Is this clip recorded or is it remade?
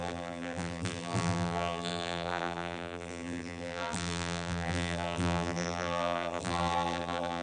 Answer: remade